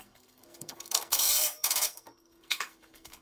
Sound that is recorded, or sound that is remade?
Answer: remade